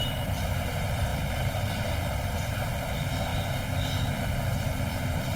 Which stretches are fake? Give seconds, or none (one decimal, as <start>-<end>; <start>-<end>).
0.0-3.3; 4.1-5.4